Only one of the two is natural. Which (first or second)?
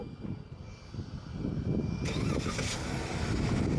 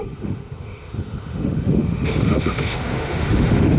first